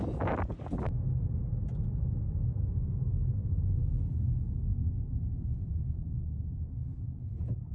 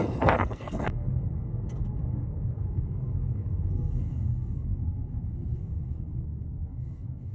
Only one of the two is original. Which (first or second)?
first